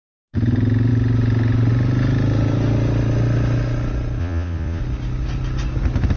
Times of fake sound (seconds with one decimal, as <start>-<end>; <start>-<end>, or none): 4.2-4.8